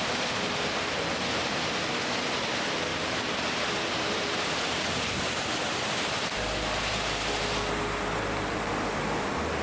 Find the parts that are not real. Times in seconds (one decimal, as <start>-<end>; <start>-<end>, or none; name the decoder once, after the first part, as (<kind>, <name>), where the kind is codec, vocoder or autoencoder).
2.9-5.2 (vocoder, BigVGAN v2)